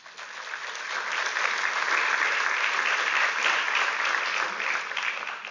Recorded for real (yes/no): yes